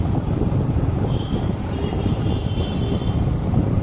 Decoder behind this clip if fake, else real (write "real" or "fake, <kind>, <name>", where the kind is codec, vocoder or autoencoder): fake, vocoder, BigVGAN v2